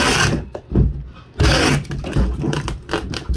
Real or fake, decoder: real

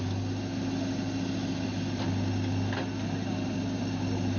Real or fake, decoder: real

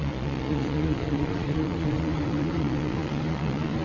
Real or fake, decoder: fake, vocoder, Vocos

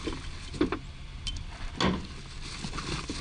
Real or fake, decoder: real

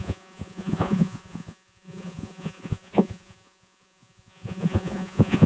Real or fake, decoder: fake, vocoder, Vocos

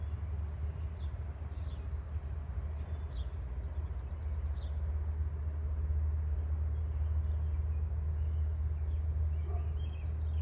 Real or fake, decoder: real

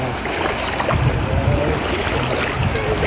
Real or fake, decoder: real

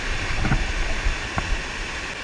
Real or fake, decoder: real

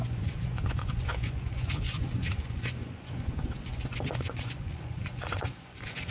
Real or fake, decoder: fake, vocoder, Vocos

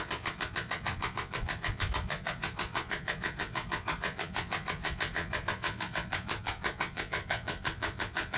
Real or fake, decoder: fake, vocoder, Vocos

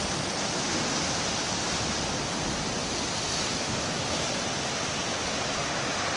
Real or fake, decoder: real